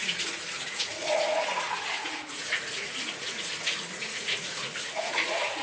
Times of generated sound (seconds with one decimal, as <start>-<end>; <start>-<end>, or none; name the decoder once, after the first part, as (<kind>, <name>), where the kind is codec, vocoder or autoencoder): 0.0-5.6 (vocoder, Vocos)